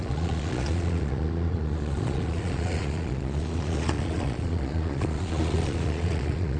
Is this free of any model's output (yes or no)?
no